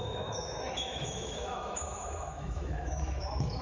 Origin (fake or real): fake